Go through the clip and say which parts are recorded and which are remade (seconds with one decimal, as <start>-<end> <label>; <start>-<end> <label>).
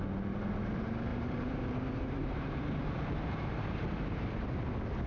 0.0-1.1 recorded; 1.1-3.8 remade; 3.8-5.1 recorded